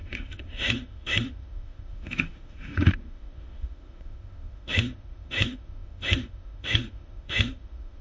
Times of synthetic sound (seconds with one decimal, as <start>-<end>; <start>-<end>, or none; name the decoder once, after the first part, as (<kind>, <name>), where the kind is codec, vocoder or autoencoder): 0.0-8.0 (autoencoder, DAC-VAE)